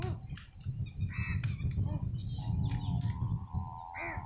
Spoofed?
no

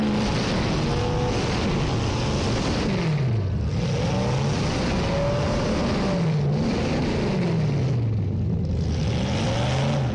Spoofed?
no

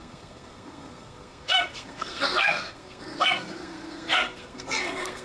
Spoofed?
yes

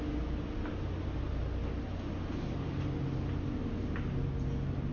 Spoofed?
no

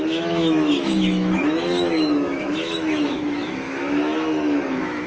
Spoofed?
yes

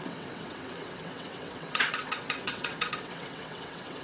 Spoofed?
yes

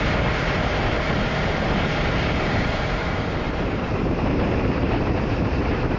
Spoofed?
yes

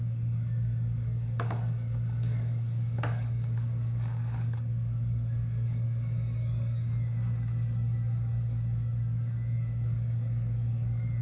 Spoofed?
yes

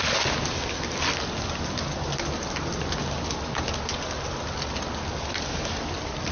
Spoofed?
no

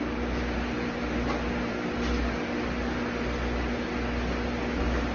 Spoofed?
no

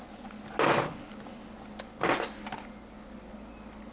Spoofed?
no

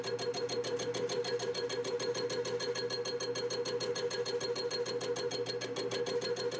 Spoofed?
no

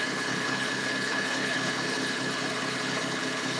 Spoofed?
yes